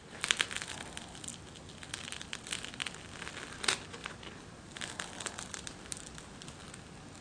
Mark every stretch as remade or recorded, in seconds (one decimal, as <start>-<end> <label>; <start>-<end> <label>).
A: 0.0-7.2 recorded